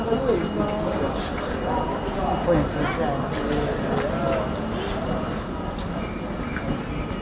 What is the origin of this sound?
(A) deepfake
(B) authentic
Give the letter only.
B